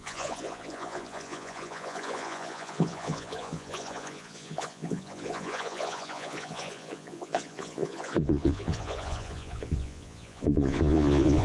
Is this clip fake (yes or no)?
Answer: yes